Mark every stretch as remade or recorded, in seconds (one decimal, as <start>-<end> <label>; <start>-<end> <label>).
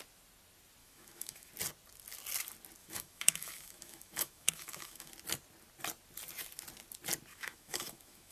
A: 0.0-0.8 recorded; 0.8-1.5 remade; 1.5-2.8 recorded; 2.8-5.1 remade; 5.1-7.3 recorded; 7.3-8.3 remade